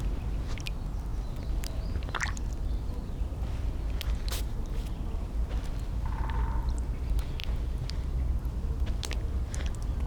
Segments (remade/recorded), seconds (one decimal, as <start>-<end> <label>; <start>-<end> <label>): 0.0-10.1 recorded